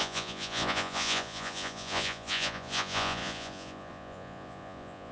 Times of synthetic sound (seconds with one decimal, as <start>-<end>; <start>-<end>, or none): 0.0-5.1